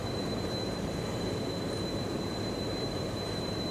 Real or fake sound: fake